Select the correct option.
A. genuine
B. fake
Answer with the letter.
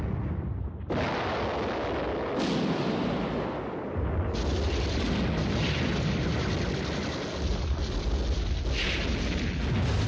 A